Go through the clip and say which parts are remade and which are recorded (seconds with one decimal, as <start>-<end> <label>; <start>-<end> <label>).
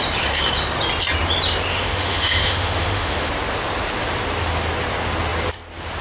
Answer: 0.0-1.7 recorded; 1.7-3.3 remade; 3.3-6.0 recorded